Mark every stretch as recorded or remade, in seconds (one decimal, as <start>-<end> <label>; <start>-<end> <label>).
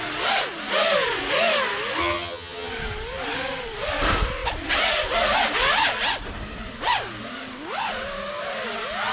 0.0-2.0 recorded; 2.0-2.7 remade; 2.7-9.1 recorded